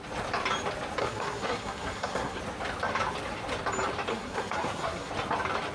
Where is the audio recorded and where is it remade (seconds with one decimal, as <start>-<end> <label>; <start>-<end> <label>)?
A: 0.0-1.0 recorded; 1.0-2.4 remade; 2.4-4.1 recorded; 4.1-5.1 remade; 5.1-5.7 recorded